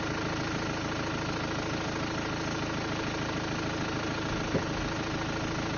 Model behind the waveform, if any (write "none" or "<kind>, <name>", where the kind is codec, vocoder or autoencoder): none